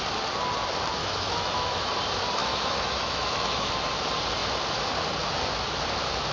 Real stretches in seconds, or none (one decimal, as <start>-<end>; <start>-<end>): 0.0-1.0; 1.9-2.4; 3.7-6.3